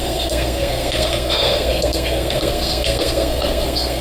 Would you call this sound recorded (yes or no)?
no